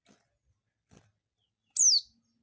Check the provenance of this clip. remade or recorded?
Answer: recorded